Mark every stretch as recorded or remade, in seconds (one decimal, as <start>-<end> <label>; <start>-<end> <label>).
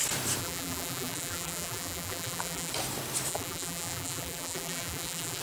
0.0-0.4 recorded; 0.4-2.7 remade; 2.7-3.3 recorded; 3.3-5.4 remade